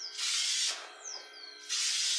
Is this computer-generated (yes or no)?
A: no